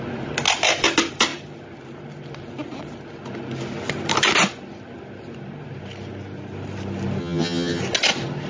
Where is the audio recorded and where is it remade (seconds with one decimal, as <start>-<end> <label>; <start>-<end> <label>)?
0.0-7.2 recorded; 7.2-7.8 remade; 7.8-8.5 recorded